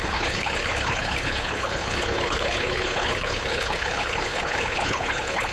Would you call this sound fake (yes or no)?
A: yes